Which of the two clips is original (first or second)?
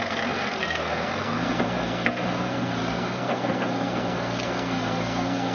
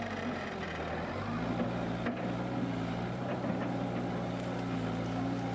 second